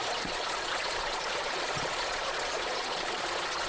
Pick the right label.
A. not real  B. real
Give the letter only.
A